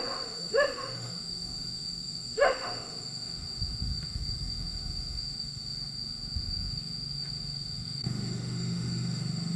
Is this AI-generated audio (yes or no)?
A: yes